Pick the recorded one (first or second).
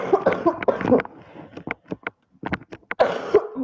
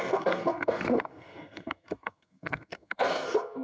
first